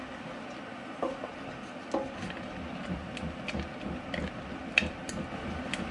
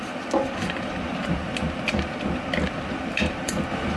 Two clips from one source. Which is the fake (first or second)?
second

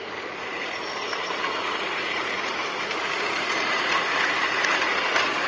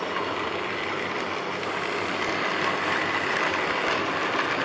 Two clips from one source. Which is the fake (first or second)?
first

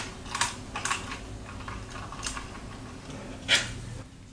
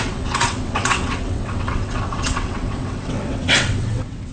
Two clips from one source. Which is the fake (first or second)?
second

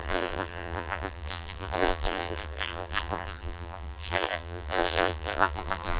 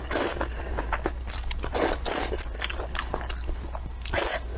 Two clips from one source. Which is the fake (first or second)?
first